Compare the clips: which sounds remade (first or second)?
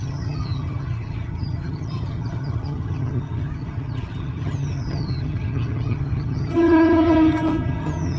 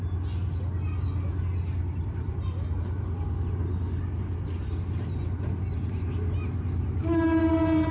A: first